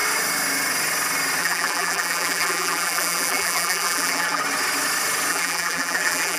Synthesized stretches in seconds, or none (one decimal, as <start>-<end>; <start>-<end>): 1.4-4.4; 5.3-6.4